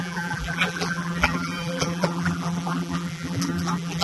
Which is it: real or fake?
fake